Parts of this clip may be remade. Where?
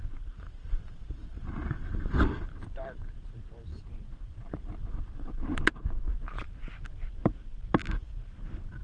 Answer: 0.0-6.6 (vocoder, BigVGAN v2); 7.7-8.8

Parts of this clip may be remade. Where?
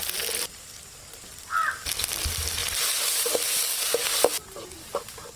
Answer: none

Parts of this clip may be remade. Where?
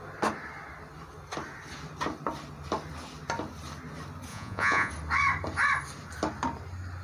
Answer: 4.3-4.9 (vocoder, Vocos)